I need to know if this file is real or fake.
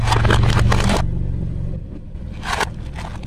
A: real